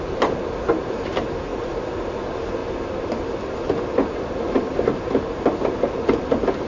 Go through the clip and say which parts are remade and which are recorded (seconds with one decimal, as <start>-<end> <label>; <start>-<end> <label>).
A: 0.0-6.7 recorded